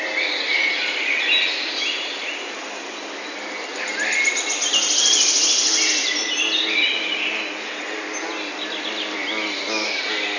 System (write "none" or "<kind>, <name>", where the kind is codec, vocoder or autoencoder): none